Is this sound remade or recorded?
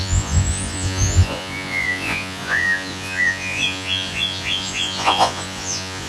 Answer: remade